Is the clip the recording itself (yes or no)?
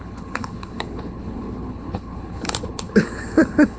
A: no